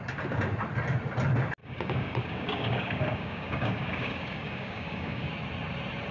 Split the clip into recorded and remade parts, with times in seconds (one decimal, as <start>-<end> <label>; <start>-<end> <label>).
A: 0.0-1.6 recorded; 1.6-5.3 remade; 5.3-6.1 recorded

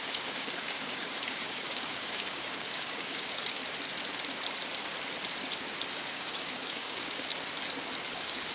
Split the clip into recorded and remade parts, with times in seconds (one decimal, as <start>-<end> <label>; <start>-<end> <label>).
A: 0.0-3.6 remade; 3.6-5.9 recorded; 5.9-7.3 remade; 7.3-8.1 recorded; 8.1-8.5 remade

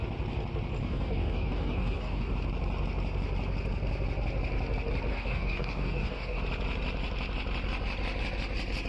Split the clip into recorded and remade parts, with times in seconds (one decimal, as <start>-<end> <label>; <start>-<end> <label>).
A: 0.0-0.8 recorded; 0.8-2.3 remade; 2.3-5.1 recorded; 5.1-6.4 remade; 6.4-8.9 recorded

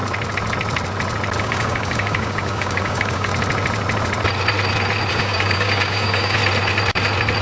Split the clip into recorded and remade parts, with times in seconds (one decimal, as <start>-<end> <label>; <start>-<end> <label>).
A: 0.0-1.4 recorded; 1.4-3.3 remade; 3.3-5.1 recorded; 5.1-6.4 remade; 6.4-7.4 recorded

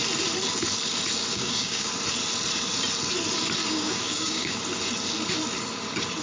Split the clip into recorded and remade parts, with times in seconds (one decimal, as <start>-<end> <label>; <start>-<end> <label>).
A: 0.0-1.3 recorded; 1.3-1.9 remade; 1.9-3.6 recorded; 3.6-4.6 remade; 4.6-6.2 recorded

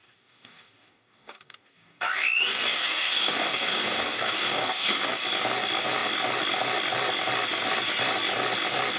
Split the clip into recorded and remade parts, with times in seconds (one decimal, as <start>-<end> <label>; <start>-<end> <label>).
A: 0.0-5.1 remade; 5.1-9.0 recorded

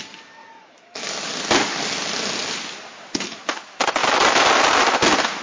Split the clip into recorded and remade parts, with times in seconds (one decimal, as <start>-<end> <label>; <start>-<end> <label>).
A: 0.0-0.4 recorded; 0.4-1.3 remade; 1.3-5.4 recorded

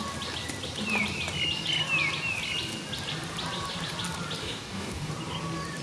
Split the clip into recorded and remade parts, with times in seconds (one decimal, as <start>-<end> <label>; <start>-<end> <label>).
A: 0.0-4.4 recorded; 4.4-5.1 remade; 5.1-5.8 recorded